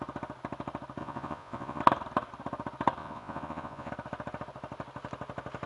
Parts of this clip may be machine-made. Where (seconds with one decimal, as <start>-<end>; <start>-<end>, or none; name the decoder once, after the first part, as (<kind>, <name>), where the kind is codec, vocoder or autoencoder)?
1.0-1.8 (vocoder, Vocos); 3.0-3.9